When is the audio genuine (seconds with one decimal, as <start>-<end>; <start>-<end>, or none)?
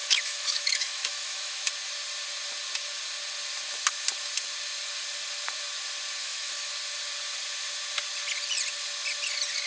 1.7-6.2; 6.7-9.7